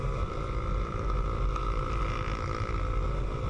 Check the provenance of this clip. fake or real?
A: real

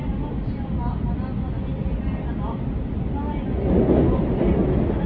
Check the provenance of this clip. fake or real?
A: real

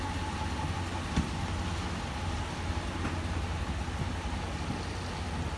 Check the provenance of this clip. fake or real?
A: real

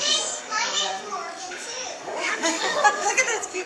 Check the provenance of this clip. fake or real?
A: fake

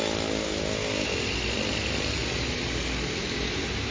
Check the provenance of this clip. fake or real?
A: real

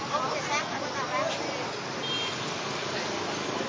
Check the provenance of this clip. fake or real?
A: real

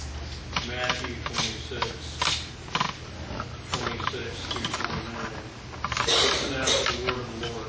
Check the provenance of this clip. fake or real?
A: real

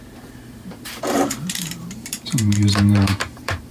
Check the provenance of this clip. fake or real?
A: fake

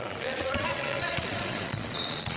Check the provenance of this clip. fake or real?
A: fake